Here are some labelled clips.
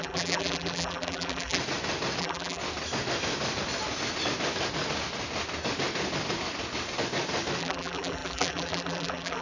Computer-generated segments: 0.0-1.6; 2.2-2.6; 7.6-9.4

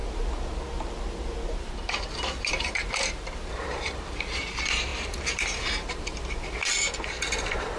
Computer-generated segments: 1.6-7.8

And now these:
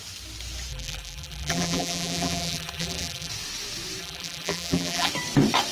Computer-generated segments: 0.7-3.3; 4.0-5.1

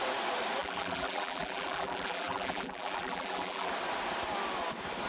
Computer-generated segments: 0.6-3.7

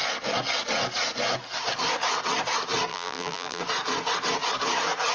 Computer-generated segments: 2.9-3.6

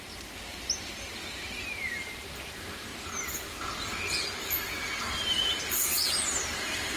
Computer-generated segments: 0.0-2.9; 5.0-7.0